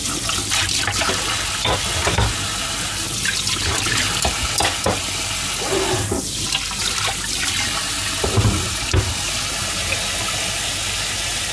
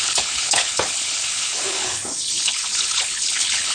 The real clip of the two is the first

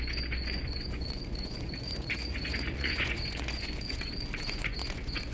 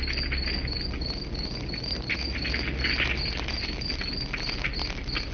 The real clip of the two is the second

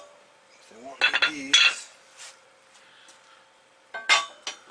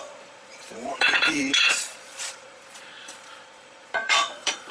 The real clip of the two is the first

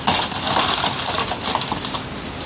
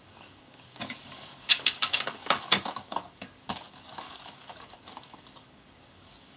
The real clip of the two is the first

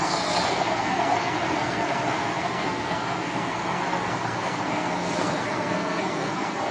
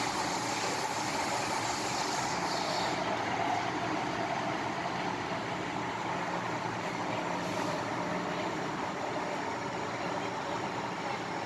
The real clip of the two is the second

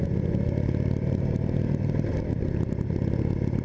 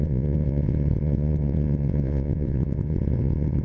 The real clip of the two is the first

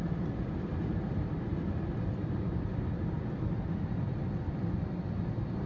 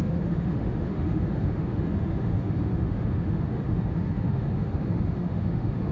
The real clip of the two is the first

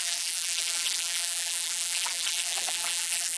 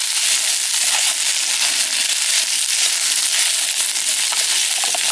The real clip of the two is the second